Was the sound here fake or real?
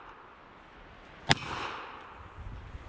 real